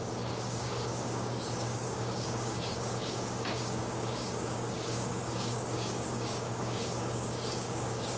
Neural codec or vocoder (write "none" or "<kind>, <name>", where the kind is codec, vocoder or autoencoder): codec, DAC